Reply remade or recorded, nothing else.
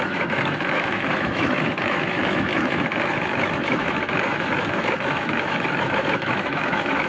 remade